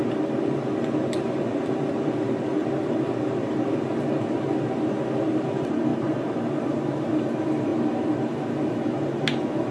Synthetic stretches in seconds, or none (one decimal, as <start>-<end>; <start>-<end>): 0.0-9.7